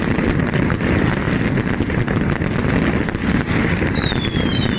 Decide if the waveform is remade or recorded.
recorded